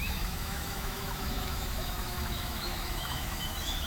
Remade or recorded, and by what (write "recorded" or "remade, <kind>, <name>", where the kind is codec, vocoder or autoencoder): remade, autoencoder, DAC-VAE